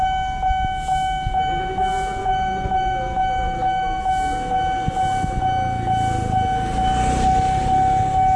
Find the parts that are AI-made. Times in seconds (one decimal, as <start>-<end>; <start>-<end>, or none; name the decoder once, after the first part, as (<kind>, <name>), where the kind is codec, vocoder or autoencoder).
2.2-4.0 (autoencoder, DAC-VAE)